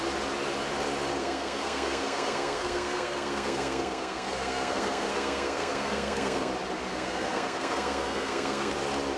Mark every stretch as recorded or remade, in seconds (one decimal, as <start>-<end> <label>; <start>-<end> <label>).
0.0-1.2 recorded; 1.2-6.5 remade; 6.5-6.9 recorded; 6.9-8.7 remade; 8.7-9.2 recorded